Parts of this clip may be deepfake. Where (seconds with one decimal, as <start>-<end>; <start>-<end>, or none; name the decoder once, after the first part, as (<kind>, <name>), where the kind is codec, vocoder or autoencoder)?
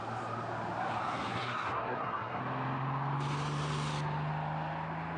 1.0-2.4 (codec, SNAC)